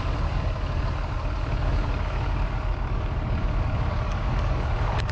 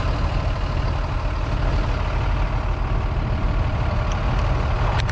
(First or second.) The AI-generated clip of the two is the first